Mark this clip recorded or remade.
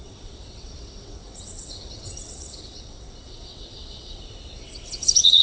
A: remade